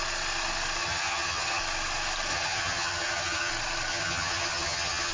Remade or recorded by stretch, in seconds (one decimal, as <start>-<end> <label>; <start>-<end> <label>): 0.0-0.8 recorded; 0.8-1.6 remade; 1.6-2.3 recorded; 2.3-3.5 remade; 3.5-3.9 recorded; 3.9-5.1 remade